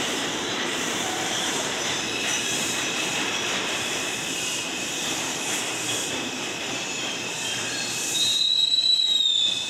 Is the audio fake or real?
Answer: fake